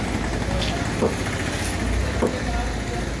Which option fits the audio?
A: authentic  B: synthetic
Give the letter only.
A